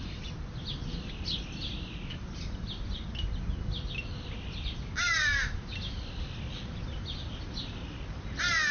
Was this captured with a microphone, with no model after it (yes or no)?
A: yes